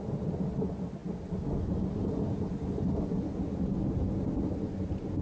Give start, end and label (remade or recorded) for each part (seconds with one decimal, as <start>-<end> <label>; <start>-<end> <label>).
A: 0.0-5.2 recorded